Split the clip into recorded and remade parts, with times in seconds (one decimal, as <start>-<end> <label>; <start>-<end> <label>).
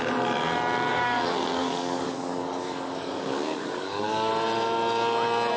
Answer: 0.0-0.9 recorded; 0.9-4.3 remade; 4.3-5.6 recorded